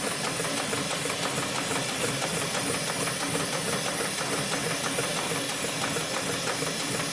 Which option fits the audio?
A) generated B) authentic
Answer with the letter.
B